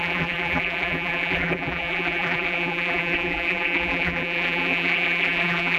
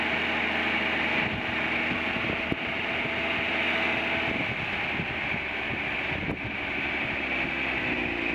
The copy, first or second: first